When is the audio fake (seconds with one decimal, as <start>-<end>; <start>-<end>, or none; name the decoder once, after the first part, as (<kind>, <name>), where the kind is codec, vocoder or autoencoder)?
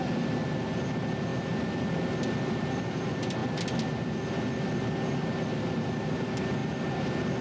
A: none